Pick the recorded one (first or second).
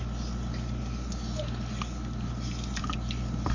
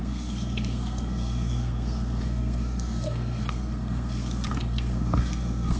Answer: first